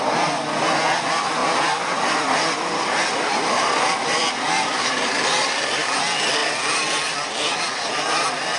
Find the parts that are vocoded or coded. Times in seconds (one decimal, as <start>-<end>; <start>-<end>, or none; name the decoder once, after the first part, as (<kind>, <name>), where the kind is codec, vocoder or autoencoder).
1.4-5.7 (vocoder, BigVGAN v2); 6.4-7.5

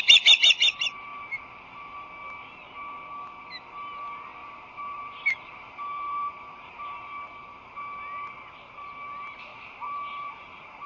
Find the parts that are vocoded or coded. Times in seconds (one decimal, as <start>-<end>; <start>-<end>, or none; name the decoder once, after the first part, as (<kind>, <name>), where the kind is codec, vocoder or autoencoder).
4.4-6.9 (vocoder, BigVGAN v2); 9.5-10.9

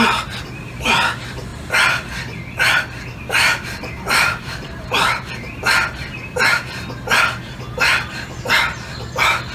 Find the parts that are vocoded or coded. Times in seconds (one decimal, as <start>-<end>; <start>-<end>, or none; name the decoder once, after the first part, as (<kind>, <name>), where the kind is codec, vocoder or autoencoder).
3.2-5.6 (vocoder, BigVGAN v2)

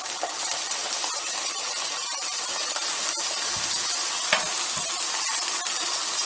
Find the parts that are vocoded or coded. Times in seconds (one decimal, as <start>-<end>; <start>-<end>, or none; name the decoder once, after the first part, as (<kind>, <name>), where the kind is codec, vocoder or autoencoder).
none

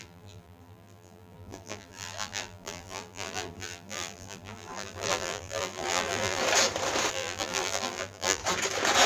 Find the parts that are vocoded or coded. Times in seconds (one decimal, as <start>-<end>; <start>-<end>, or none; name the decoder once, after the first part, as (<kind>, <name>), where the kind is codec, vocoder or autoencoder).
0.0-6.4 (vocoder, BigVGAN v2); 7.1-8.4

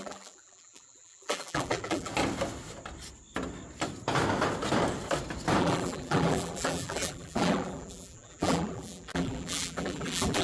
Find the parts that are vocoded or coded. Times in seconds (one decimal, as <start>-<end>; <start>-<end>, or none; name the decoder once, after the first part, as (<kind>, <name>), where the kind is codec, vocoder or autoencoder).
0.0-2.1 (vocoder, BigVGAN v2); 5.6-10.4